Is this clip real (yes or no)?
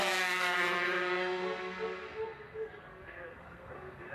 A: no